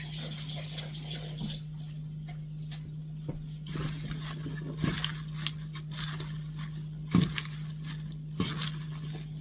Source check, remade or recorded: recorded